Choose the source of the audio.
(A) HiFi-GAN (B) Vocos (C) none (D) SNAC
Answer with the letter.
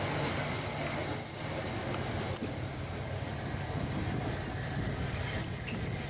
C